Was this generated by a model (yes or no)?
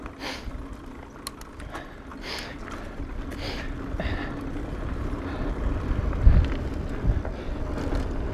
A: no